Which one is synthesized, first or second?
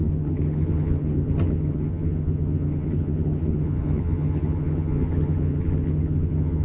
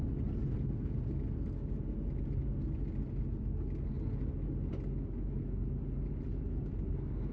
first